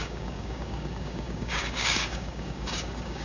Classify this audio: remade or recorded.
remade